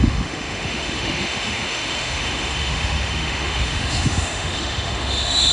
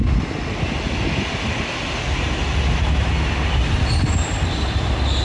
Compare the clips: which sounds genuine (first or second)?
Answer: second